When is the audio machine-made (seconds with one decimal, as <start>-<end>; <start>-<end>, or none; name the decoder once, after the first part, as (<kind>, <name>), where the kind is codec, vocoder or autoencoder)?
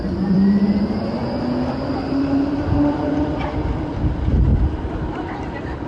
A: 0.0-1.2 (vocoder, BigVGAN v2); 2.1-4.5; 5.1-5.9